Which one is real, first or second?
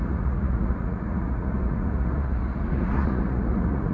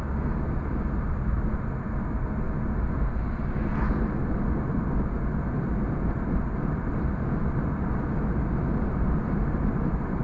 second